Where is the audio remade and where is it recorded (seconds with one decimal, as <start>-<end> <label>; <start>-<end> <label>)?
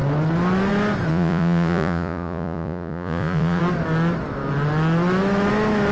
0.0-1.1 recorded; 1.1-3.6 remade; 3.6-5.9 recorded